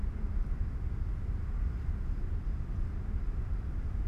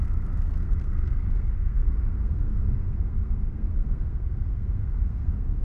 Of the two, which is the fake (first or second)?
second